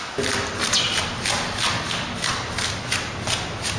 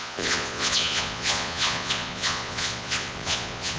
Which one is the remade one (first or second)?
second